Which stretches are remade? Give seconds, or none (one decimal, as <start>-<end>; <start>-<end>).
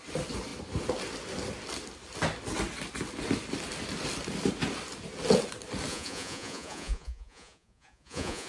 5.9-8.5